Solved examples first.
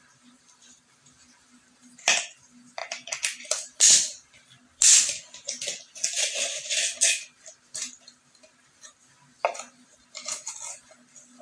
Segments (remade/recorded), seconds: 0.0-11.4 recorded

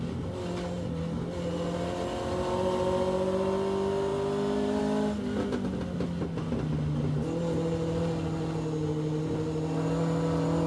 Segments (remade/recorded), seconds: 0.0-10.7 recorded

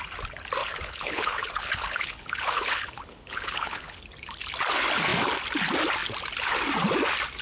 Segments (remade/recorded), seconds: 0.0-0.6 recorded; 0.6-4.0 remade; 4.0-7.4 recorded

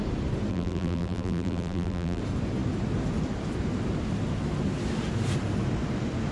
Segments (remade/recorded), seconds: 0.0-0.5 recorded; 0.5-2.2 remade; 2.2-6.3 recorded

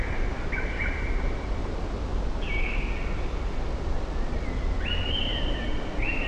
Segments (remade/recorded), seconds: 0.0-1.6 remade; 1.6-5.0 recorded; 5.0-6.3 remade

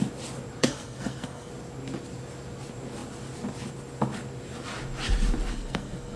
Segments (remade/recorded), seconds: 0.0-0.6 recorded; 0.6-1.5 remade; 1.5-5.5 recorded; 5.5-6.2 remade

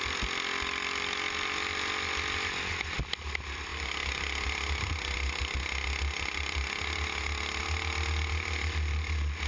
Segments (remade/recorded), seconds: 0.0-9.5 recorded